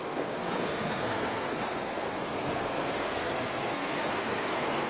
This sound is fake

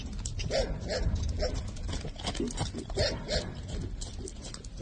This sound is real